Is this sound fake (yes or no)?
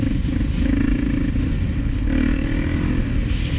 no